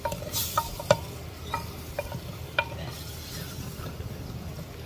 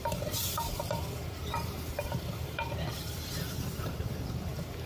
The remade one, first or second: second